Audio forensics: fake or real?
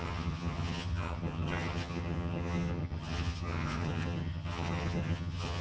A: fake